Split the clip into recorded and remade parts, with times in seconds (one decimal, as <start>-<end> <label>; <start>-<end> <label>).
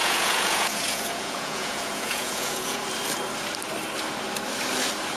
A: 0.0-2.8 remade; 2.8-5.2 recorded